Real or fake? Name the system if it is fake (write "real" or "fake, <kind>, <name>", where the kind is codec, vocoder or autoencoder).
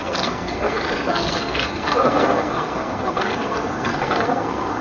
fake, codec, SNAC